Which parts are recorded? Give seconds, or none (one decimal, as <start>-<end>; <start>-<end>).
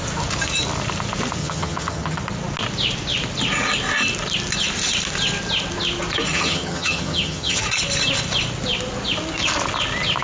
0.0-1.4; 2.2-6.3; 7.6-10.2